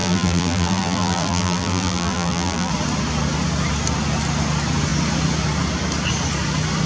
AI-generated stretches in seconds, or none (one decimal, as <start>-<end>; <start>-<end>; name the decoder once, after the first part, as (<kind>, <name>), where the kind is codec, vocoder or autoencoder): 0.0-2.7 (vocoder, BigVGAN v2)